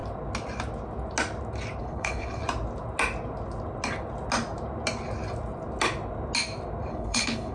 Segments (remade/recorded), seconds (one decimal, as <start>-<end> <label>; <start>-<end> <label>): 0.0-1.8 recorded; 1.8-2.4 remade; 2.4-6.9 recorded; 6.9-7.5 remade